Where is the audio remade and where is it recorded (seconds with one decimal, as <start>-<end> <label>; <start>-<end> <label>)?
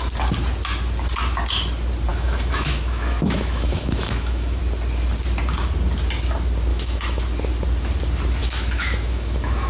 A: 0.0-2.1 recorded; 2.1-4.6 remade; 4.6-6.7 recorded; 6.7-7.2 remade; 7.2-8.4 recorded; 8.4-9.7 remade